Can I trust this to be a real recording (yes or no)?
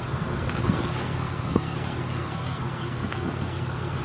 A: no